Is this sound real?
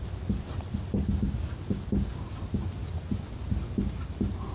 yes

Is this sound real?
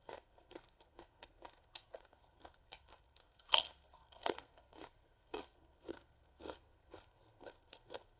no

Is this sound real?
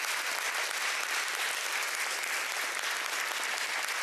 yes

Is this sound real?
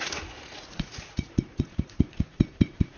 no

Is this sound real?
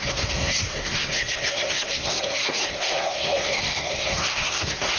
no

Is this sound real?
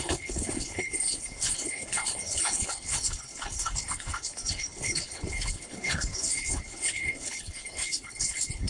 no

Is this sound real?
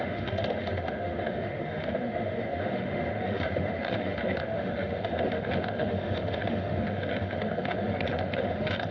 no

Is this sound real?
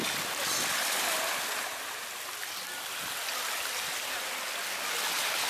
yes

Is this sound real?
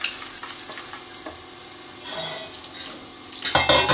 yes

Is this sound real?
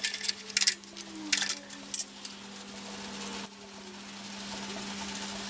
yes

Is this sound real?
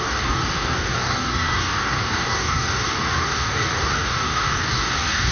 no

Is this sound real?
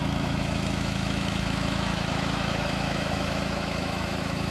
no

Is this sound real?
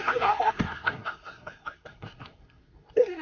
no